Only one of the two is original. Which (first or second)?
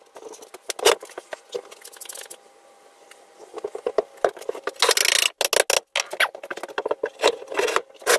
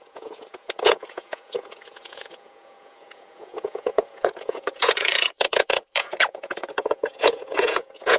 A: first